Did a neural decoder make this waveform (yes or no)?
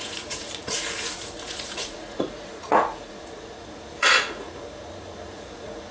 yes